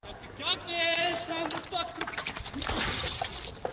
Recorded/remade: recorded